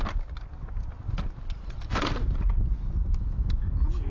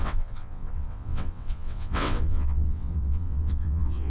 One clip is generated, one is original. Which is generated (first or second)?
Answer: second